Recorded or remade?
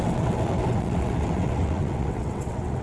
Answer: remade